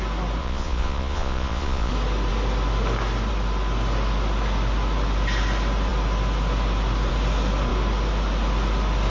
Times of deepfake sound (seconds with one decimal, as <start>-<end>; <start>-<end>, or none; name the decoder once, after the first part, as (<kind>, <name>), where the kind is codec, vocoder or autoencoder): 0.4-1.9 (vocoder, Vocos)